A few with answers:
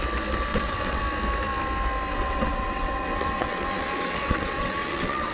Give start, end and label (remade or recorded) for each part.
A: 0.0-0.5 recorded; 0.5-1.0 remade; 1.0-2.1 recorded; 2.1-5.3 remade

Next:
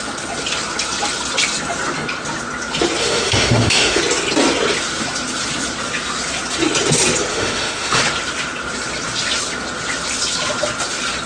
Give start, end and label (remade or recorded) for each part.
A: 0.0-3.0 recorded; 3.0-4.0 remade; 4.0-7.3 recorded; 7.3-8.0 remade; 8.0-11.3 recorded

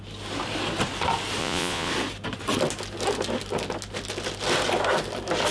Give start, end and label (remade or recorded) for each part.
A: 0.0-1.4 recorded; 1.4-1.9 remade; 1.9-5.5 recorded

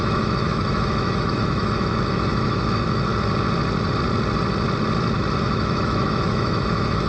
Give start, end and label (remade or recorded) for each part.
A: 0.0-3.1 remade; 3.1-5.4 recorded; 5.4-7.1 remade

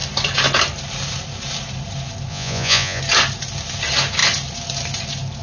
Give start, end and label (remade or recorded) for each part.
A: 0.0-2.3 recorded; 2.3-3.0 remade; 3.0-5.4 recorded